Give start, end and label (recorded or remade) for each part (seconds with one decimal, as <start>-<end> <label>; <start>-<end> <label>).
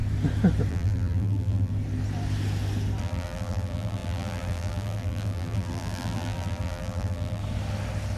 0.0-0.7 recorded; 0.7-1.7 remade; 1.7-3.0 recorded; 3.0-7.4 remade; 7.4-8.2 recorded